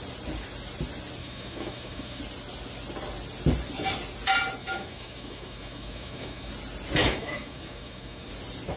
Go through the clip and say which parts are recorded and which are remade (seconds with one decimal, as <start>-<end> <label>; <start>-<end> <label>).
0.0-1.2 recorded; 1.2-2.2 remade; 2.2-4.6 recorded; 4.6-6.5 remade; 6.5-7.0 recorded; 7.0-8.3 remade; 8.3-8.8 recorded